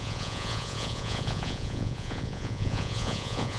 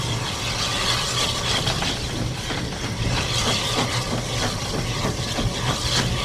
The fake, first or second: first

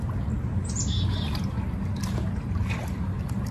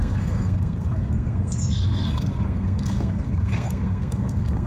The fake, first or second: second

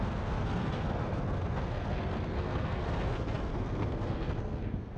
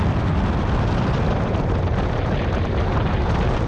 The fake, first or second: first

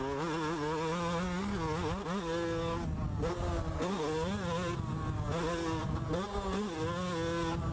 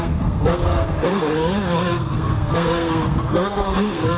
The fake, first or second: second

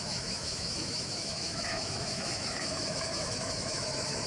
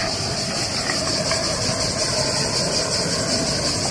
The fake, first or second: first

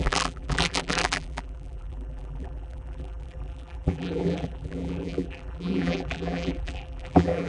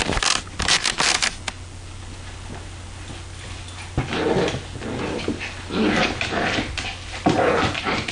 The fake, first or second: first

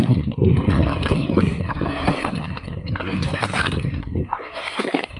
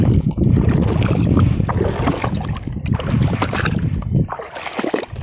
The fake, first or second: first